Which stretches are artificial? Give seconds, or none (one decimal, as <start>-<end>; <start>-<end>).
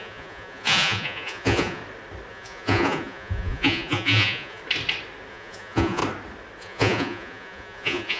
0.0-1.8; 2.3-4.6; 5.3-6.0; 6.6-8.2